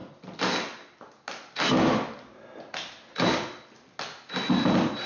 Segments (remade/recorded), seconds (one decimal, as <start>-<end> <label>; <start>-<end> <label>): 0.0-5.1 recorded